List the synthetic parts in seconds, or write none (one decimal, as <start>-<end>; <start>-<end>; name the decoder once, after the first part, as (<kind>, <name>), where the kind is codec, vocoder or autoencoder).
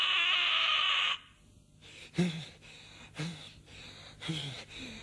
none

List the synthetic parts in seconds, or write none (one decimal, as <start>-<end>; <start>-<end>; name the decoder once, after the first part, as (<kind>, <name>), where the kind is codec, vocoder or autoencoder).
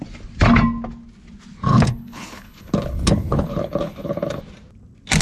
1.7-4.4 (codec, HILCodec)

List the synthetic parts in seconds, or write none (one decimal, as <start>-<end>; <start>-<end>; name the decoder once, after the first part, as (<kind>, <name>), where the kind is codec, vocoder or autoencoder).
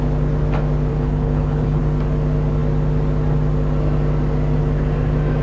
0.9-1.8 (codec, HILCodec)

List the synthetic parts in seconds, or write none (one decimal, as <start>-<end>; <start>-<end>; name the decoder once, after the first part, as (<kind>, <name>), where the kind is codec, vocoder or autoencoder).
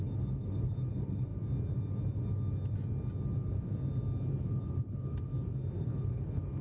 0.0-1.3 (codec, HILCodec); 4.4-5.3; 5.8-6.6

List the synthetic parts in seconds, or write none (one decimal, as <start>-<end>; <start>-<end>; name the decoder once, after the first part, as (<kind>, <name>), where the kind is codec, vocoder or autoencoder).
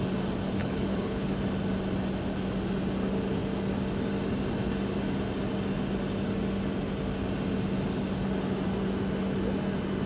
0.6-1.3 (codec, HILCodec)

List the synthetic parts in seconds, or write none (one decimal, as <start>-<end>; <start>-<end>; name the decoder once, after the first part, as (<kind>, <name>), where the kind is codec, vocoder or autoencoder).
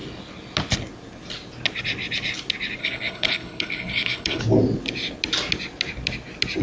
2.8-4.4 (codec, HILCodec)